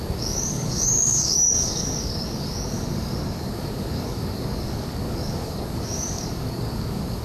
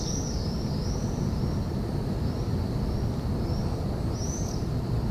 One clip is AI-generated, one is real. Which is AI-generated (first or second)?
first